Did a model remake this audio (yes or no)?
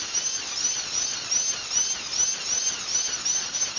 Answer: no